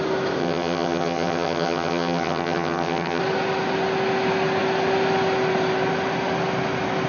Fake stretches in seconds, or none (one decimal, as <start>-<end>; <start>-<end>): 0.4-3.2